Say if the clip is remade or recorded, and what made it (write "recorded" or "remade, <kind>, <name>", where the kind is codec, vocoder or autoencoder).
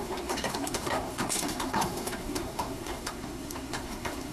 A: remade, codec, SNAC